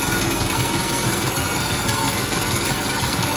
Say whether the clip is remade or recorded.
remade